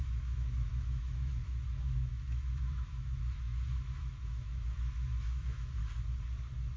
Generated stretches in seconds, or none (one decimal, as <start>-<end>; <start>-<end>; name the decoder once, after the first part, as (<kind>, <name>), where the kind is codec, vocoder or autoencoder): 0.0-5.8 (autoencoder, DAC-VAE)